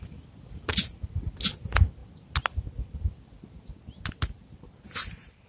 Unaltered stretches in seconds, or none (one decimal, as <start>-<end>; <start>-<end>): 0.0-0.7; 1.2-5.5